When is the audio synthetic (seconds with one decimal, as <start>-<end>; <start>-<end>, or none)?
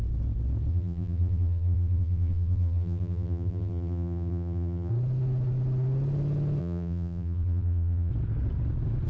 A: 0.7-4.9; 6.6-8.1